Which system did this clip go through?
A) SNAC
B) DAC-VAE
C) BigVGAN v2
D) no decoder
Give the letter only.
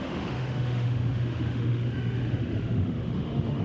B